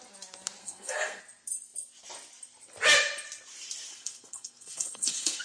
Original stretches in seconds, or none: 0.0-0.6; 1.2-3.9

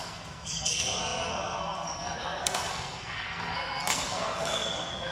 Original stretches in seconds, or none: none

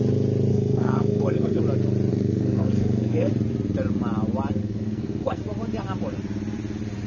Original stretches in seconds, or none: 0.0-0.5; 1.6-2.1; 3.3-4.6; 5.4-7.1